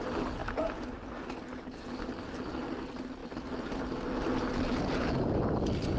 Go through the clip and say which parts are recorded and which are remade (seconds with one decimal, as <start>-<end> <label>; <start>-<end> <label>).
0.0-6.0 recorded